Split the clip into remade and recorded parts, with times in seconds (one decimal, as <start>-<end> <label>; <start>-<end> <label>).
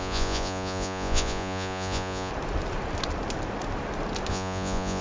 0.0-2.3 remade; 2.3-4.3 recorded; 4.3-5.0 remade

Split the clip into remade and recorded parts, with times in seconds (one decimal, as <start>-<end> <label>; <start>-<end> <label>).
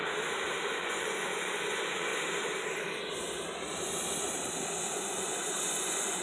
0.0-0.7 recorded; 0.7-2.1 remade; 2.1-4.8 recorded; 4.8-6.2 remade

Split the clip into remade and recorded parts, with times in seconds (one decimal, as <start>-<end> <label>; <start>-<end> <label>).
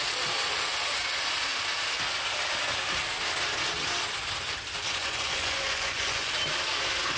0.0-5.0 recorded; 5.0-6.3 remade; 6.3-7.2 recorded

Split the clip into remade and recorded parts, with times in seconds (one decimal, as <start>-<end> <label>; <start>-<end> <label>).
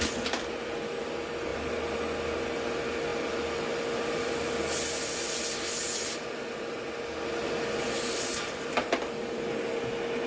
0.0-10.3 recorded